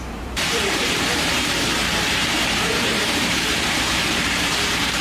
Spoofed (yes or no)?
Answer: yes